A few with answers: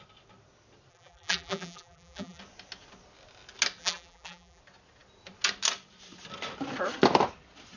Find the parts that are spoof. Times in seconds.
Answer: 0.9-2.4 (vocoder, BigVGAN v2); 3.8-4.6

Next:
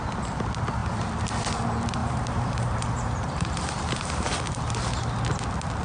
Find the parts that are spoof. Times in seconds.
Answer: 2.0-4.7 (vocoder, BigVGAN v2)

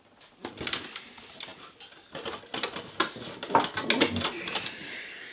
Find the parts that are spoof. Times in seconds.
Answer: none

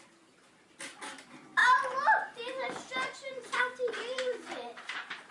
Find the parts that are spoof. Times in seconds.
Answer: 1.6-3.6 (vocoder, BigVGAN v2); 4.1-5.3

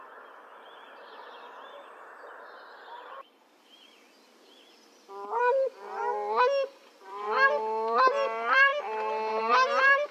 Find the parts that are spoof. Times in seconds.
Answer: 0.0-6.0 (vocoder, BigVGAN v2); 6.9-8.7; 9.4-10.1